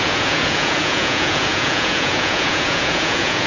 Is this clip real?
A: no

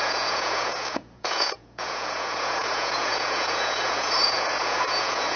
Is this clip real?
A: no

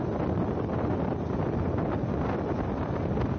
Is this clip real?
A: yes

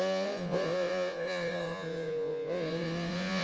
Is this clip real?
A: no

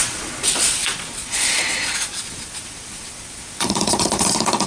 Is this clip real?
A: no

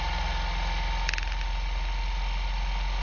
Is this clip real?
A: yes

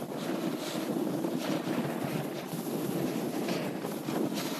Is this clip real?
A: yes